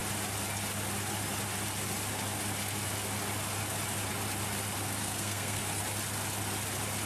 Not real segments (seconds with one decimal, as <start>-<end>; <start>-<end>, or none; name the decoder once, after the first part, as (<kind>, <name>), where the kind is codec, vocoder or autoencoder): 5.0-5.8 (codec, SNAC)

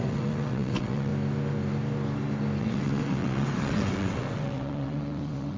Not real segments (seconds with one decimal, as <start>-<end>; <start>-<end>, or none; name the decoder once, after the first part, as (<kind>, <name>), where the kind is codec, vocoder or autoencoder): 0.0-1.1 (vocoder, WaveNeXt); 2.6-5.6

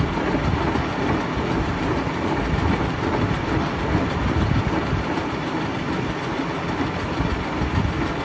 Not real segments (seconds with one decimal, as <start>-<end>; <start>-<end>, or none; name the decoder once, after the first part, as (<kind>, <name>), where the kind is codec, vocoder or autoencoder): 1.7-5.2 (vocoder, BigVGAN v2)

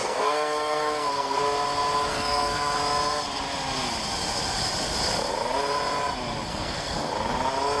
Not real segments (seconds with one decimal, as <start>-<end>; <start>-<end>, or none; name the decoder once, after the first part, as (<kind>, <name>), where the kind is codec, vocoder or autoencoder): 0.0-1.4 (codec, SNAC); 2.1-2.8; 6.5-7.1

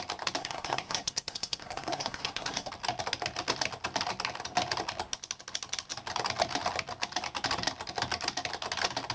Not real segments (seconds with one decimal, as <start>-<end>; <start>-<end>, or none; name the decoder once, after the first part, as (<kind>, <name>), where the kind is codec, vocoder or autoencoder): 0.4-2.7 (codec, SNAC)

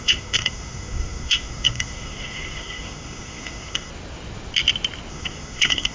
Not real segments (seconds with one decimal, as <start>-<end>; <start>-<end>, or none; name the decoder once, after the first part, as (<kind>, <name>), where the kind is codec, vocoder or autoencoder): 0.0-3.9 (codec, SNAC); 5.1-5.9